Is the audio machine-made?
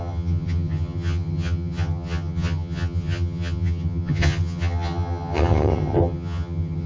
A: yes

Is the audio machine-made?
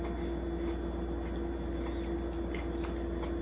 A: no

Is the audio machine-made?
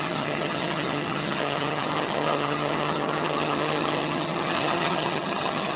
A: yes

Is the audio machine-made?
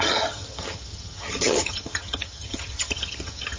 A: yes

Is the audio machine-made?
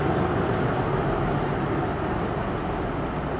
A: no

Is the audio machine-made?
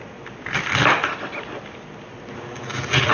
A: no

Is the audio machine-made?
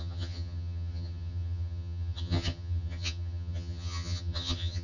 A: yes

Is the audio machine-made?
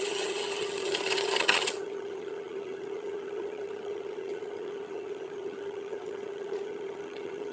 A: yes